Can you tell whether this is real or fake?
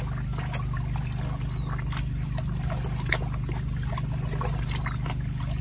real